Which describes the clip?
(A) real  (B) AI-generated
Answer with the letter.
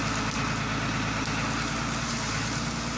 A